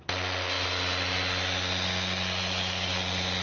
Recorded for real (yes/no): yes